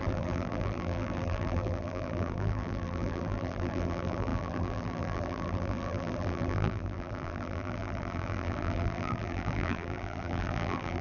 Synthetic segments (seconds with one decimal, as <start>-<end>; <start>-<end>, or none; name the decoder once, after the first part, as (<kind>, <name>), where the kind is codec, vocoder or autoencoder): 0.0-11.0 (vocoder, BigVGAN v2)